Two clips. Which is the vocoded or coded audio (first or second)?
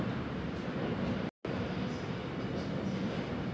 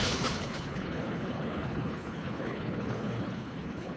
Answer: second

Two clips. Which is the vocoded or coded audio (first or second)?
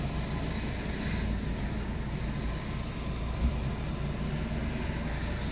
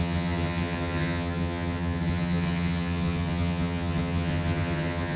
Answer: second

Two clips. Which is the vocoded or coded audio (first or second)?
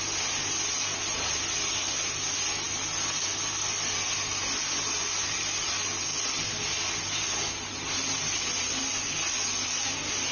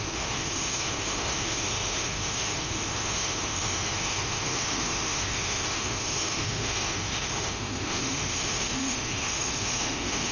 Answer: second